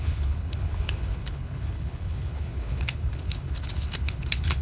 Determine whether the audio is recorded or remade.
remade